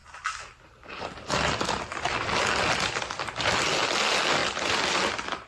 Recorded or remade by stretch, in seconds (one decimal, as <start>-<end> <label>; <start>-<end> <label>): 0.0-5.5 recorded